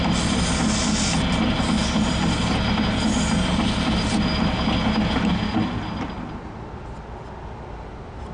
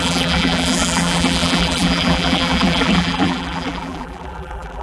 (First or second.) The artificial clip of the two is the second